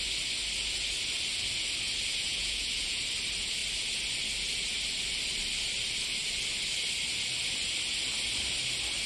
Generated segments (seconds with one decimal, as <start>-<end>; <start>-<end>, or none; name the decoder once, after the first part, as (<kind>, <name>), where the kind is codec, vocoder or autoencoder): 2.3-3.0 (vocoder, Vocos)